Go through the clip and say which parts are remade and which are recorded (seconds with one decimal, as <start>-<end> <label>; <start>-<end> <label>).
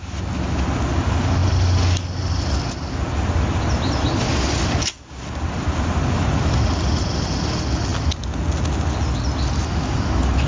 0.0-10.5 recorded